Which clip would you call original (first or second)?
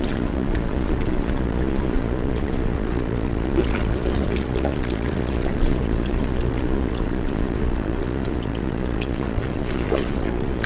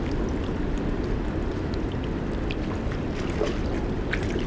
second